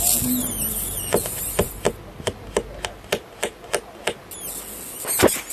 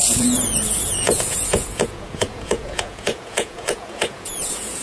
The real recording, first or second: first